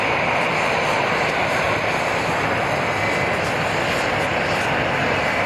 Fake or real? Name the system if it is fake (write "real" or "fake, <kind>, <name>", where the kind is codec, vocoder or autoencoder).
real